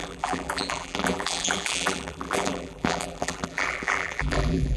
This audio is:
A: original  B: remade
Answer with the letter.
B